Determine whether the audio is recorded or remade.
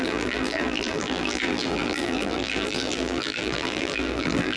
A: remade